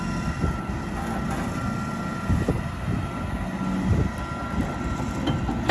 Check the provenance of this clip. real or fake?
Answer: real